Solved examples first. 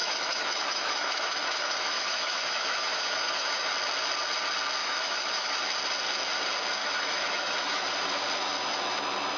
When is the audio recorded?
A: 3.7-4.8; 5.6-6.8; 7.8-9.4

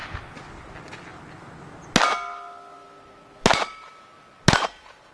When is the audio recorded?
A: 0.0-5.1

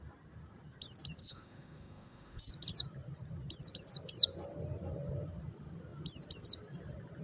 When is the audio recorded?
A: 0.0-1.2; 2.5-7.2